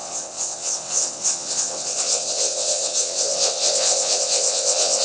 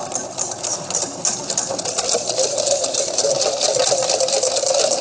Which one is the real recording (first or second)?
second